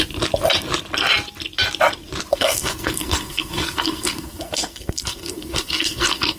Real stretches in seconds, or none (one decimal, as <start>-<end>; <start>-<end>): 0.0-2.3